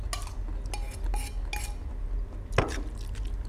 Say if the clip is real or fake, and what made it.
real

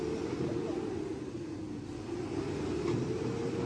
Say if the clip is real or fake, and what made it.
real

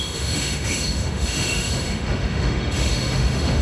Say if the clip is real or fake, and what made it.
fake, autoencoder, DAC-VAE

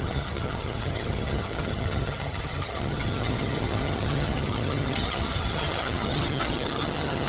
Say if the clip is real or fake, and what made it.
fake, vocoder, HiFi-GAN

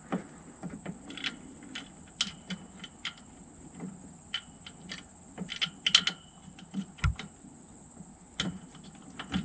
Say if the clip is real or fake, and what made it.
real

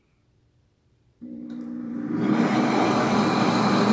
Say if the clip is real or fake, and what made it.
fake, vocoder, BigVGAN v2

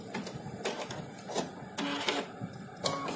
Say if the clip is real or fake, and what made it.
real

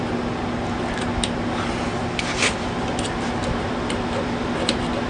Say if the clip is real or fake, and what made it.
real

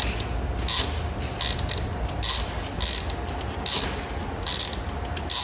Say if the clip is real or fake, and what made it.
real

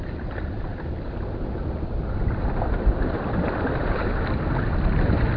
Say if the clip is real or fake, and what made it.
real